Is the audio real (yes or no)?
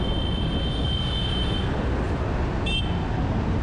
yes